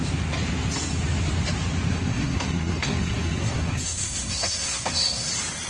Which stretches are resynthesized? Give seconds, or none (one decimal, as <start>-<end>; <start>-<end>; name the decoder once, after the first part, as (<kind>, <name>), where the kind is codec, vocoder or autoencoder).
1.9-5.3 (codec, SNAC)